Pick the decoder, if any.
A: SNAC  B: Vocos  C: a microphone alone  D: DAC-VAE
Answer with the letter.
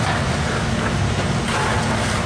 C